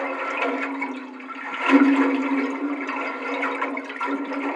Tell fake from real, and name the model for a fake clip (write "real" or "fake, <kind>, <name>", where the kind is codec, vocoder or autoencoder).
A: real